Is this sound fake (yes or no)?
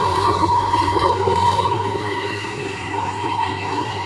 yes